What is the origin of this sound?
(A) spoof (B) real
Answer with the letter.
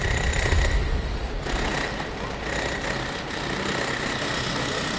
B